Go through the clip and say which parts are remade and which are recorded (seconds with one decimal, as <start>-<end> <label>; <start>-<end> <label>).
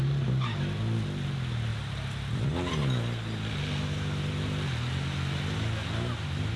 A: 0.0-1.7 recorded; 1.7-2.7 remade; 2.7-6.6 recorded